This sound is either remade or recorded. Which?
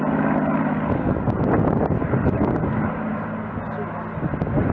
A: recorded